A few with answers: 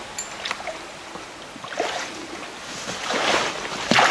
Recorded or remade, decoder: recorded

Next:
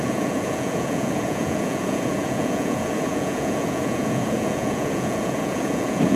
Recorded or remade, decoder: remade, vocoder, Vocos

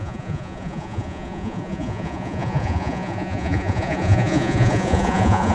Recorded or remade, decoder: remade, vocoder, Vocos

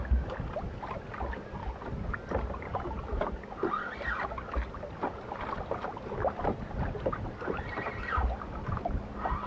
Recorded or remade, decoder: recorded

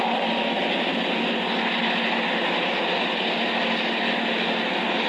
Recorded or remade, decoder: recorded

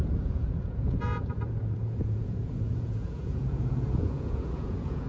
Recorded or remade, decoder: remade, vocoder, Vocos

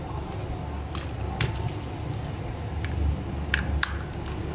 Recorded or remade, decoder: recorded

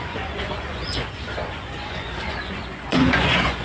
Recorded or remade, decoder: remade, vocoder, Vocos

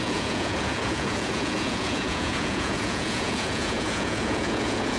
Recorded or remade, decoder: remade, vocoder, Vocos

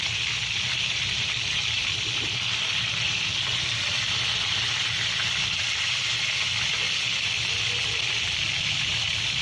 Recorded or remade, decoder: recorded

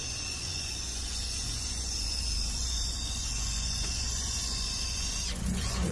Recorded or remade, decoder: remade, vocoder, Vocos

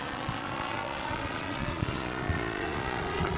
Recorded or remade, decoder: remade, vocoder, Vocos